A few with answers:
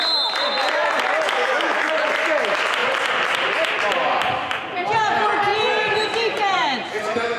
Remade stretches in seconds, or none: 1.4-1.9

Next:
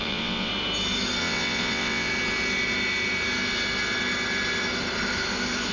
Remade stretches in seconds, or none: 0.0-0.5; 1.2-2.1

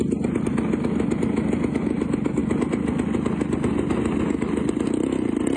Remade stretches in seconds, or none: none

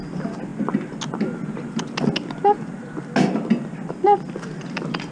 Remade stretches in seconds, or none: none

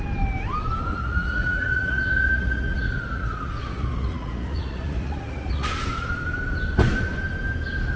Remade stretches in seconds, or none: 0.9-5.7

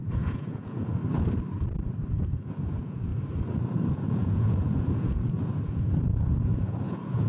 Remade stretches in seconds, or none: 0.0-1.0; 2.1-3.1; 3.9-7.3

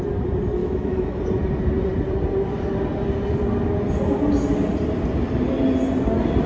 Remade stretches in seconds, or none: 0.6-1.2